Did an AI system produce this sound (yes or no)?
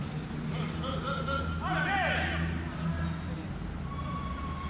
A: no